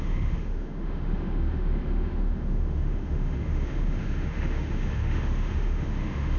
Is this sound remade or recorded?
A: remade